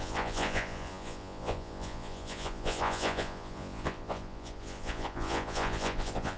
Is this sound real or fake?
fake